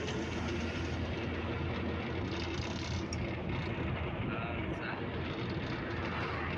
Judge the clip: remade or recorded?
recorded